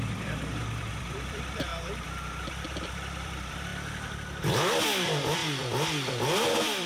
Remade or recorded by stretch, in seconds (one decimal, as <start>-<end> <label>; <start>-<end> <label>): 0.0-1.7 remade; 1.7-2.4 recorded; 2.4-3.7 remade; 3.7-4.7 recorded; 4.7-5.4 remade; 5.4-6.5 recorded; 6.5-6.9 remade